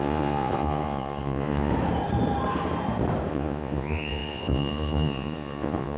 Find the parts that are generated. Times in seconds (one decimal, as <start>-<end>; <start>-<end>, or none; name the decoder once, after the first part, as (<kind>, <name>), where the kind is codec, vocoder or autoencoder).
0.0-1.7 (vocoder, Vocos); 3.3-6.0